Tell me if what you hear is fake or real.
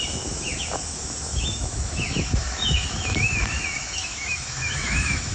fake